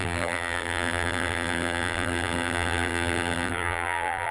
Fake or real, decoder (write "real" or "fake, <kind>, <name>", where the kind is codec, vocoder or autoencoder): fake, vocoder, BigVGAN v2